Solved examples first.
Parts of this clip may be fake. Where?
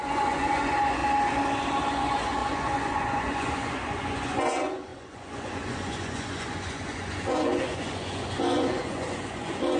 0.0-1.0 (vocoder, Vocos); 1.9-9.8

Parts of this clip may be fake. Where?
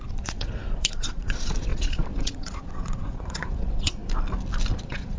0.0-4.0 (vocoder, Vocos); 4.8-5.2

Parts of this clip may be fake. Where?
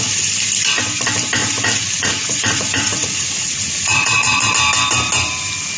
1.4-4.5 (vocoder, Vocos)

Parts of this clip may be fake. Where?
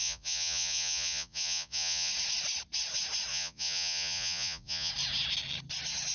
0.0-2.1 (vocoder, Vocos); 3.3-4.9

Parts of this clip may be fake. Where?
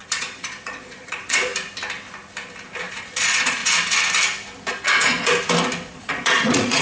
0.0-1.5 (vocoder, Vocos); 2.8-3.6; 4.7-5.3; 5.9-6.8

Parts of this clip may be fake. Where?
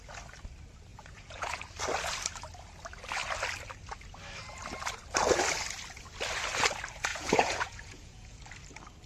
0.9-1.6 (vocoder, Vocos); 7.1-8.4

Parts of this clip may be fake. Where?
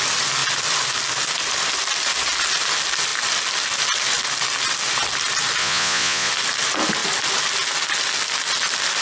5.6-6.3 (vocoder, Vocos)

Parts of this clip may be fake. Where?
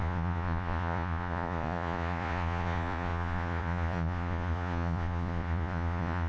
0.0-6.3 (vocoder, Vocos)